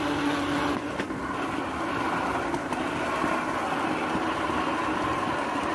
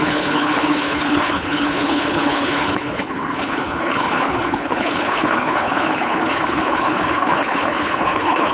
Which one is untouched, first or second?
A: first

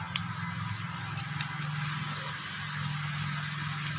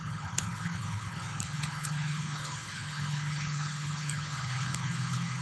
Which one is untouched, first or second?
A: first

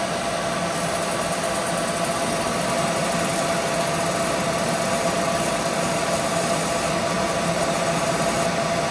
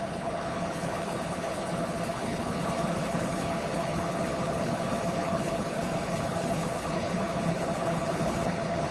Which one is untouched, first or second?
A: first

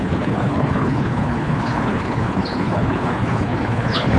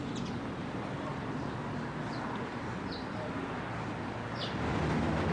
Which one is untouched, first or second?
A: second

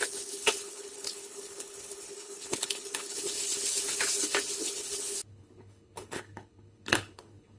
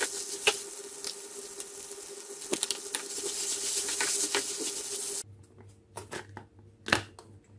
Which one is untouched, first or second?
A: second